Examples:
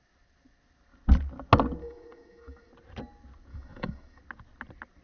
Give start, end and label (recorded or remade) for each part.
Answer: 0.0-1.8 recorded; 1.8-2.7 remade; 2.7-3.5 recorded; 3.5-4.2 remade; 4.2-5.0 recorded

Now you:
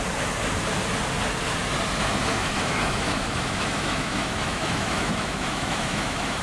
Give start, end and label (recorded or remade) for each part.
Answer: 0.0-2.4 recorded; 2.4-6.4 remade

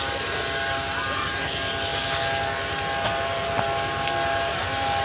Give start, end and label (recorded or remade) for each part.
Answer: 0.0-5.0 recorded

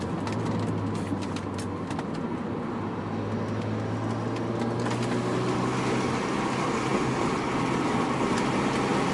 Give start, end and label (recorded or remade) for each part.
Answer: 0.0-9.1 recorded